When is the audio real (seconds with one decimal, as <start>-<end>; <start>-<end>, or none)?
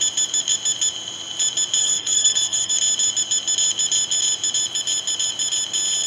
0.0-1.8; 2.7-6.1